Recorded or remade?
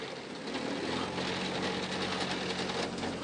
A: recorded